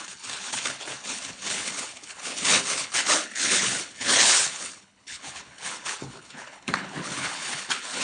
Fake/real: fake